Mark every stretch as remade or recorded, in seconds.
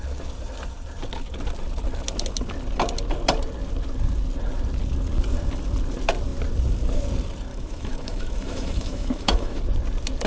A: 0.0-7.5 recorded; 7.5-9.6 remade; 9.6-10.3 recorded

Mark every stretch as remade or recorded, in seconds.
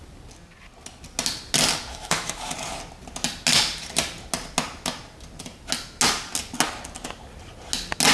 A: 0.0-1.9 recorded; 1.9-2.5 remade; 2.5-8.1 recorded